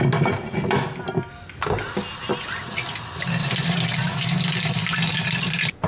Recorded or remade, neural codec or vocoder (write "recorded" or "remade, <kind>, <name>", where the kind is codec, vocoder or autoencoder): recorded